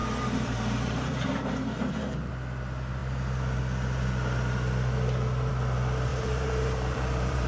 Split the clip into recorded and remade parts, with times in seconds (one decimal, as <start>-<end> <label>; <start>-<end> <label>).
0.0-2.3 remade; 2.3-6.1 recorded; 6.1-7.5 remade